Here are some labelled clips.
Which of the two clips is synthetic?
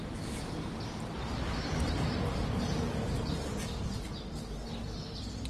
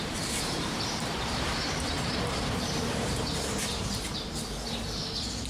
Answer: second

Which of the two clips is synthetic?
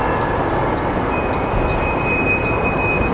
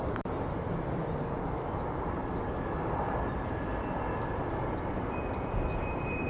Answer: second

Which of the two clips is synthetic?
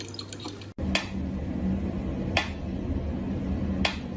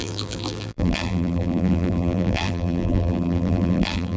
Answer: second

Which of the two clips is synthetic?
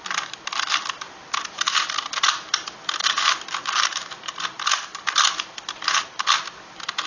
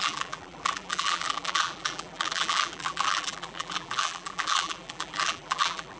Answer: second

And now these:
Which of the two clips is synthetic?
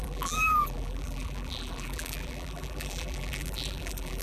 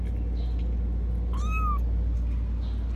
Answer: first